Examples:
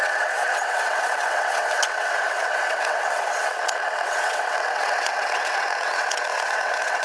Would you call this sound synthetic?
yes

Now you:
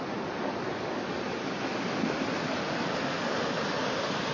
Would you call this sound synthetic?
no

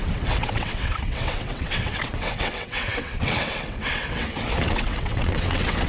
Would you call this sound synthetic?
yes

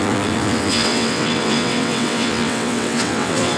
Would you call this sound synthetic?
yes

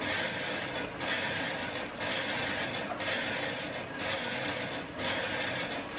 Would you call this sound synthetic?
no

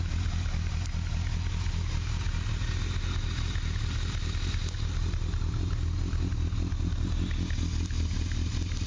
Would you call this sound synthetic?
no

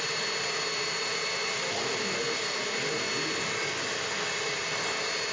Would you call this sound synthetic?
no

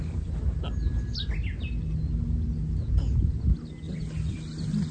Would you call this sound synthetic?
no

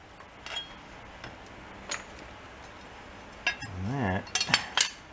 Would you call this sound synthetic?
no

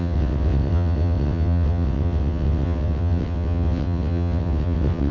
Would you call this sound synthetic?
yes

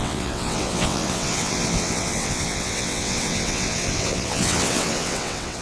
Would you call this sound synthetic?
yes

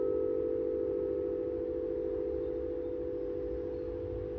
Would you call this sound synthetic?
no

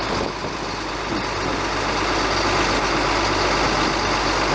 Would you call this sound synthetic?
no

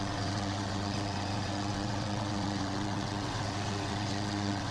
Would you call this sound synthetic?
yes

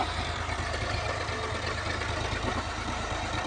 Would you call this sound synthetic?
no